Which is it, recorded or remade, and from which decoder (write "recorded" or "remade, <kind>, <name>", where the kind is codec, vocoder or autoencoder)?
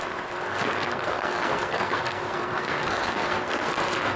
remade, codec, SNAC